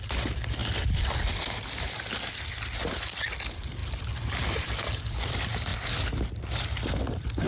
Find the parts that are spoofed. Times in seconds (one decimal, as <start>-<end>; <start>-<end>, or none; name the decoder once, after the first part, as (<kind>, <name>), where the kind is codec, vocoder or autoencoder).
0.0-0.6 (vocoder, BigVGAN v2); 2.3-3.8; 4.5-5.7; 6.5-7.5